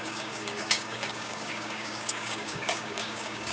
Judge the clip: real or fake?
fake